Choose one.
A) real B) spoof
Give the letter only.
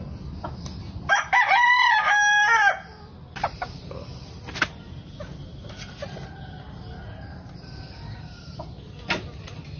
A